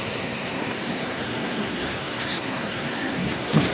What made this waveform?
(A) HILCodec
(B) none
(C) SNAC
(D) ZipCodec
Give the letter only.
C